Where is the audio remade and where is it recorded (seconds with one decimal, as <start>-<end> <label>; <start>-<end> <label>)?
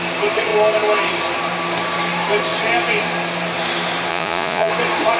0.0-4.1 recorded; 4.1-4.7 remade; 4.7-5.2 recorded